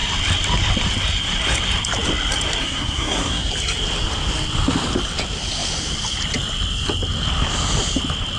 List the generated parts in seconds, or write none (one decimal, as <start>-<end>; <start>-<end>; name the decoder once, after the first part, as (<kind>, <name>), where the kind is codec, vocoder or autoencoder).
2.6-3.5 (codec, SNAC)